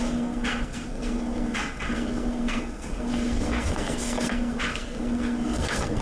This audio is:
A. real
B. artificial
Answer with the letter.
B